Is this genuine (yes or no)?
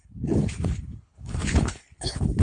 no